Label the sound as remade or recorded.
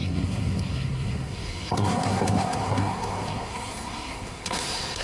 remade